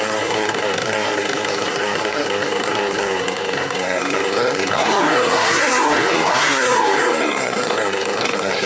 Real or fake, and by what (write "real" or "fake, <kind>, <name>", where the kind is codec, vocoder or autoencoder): fake, codec, SNAC